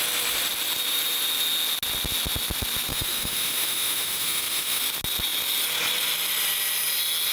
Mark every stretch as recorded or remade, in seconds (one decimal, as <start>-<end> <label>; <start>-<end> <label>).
0.0-2.9 recorded; 2.9-4.8 remade; 4.8-7.3 recorded